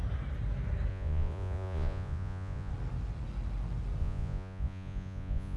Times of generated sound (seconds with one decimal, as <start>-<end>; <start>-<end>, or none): 0.9-2.7; 4.0-5.6